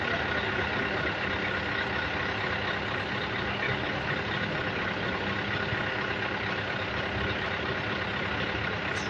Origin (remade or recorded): recorded